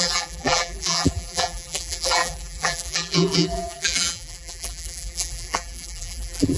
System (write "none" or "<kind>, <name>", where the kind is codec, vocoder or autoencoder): vocoder, BigVGAN v2